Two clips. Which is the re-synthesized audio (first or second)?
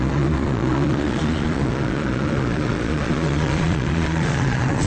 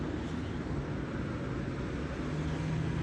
first